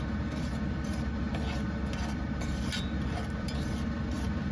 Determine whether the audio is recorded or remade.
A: recorded